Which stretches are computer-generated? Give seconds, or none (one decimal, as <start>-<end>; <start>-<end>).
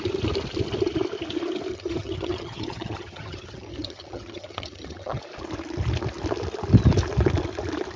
1.7-5.2